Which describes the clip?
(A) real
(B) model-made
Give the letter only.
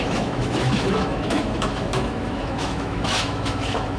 B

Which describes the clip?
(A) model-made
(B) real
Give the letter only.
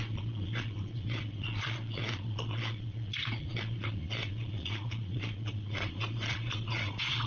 A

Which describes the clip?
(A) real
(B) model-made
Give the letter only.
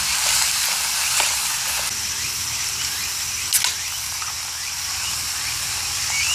A